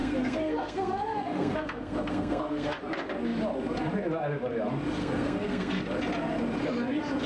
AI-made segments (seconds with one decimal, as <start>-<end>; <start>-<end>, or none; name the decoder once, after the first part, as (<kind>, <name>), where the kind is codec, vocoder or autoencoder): 0.0-2.8 (codec, SNAC); 5.0-5.8